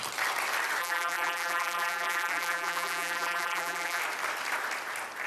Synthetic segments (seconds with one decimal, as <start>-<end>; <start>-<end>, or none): 0.8-4.0